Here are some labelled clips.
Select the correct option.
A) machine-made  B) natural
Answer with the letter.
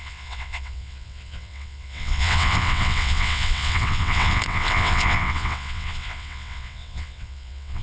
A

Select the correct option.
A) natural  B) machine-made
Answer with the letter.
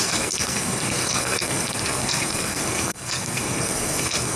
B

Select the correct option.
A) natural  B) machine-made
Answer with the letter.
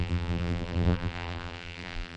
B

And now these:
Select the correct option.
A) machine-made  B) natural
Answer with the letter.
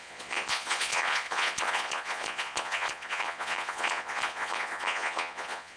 A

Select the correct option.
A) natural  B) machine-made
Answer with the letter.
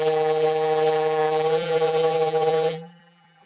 B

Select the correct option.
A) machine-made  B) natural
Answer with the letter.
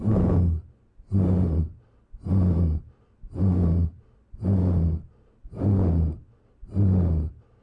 B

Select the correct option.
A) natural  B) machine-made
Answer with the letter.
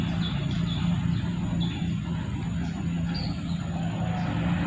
A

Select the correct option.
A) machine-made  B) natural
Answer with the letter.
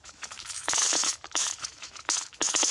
A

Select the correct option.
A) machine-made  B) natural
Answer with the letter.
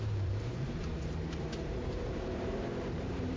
A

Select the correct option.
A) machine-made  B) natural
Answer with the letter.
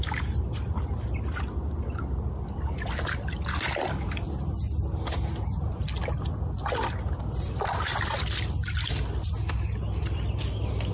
B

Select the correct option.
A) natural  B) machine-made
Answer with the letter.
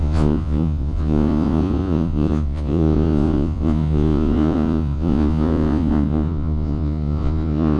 B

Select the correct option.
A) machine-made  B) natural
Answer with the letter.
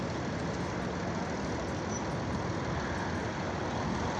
B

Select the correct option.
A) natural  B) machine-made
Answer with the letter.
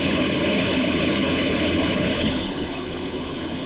B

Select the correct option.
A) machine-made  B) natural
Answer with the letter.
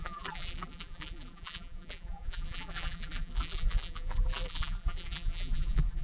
A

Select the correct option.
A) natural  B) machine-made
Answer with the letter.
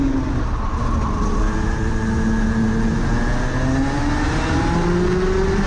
A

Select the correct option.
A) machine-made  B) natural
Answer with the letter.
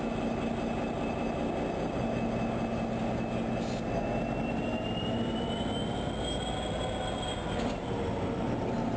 B